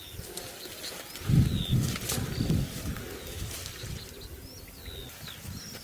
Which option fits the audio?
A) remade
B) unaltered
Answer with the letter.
B